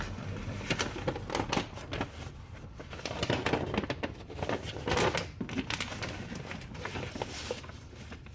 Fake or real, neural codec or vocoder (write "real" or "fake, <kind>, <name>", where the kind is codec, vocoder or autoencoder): real